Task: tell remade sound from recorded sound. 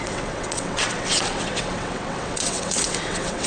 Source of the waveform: remade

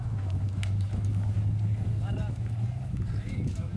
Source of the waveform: remade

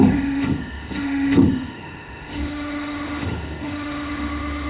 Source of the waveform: remade